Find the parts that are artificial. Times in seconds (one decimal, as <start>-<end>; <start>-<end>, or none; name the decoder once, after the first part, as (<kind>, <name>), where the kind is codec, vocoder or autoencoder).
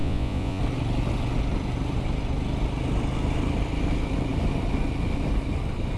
0.0-0.6 (vocoder, Vocos)